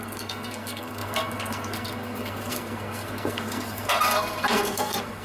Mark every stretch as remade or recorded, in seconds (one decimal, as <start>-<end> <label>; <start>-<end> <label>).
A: 0.0-5.2 remade